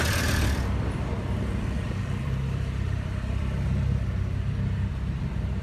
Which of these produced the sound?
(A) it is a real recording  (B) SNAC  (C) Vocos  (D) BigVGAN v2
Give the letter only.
D